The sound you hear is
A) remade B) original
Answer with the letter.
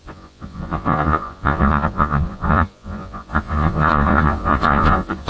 A